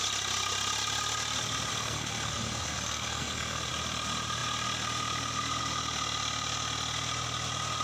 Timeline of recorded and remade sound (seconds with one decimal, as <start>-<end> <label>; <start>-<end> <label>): 0.0-1.7 recorded; 1.7-3.7 remade; 3.7-7.8 recorded